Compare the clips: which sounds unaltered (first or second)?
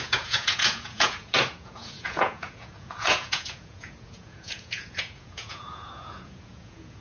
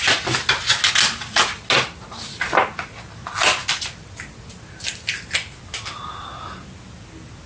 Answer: second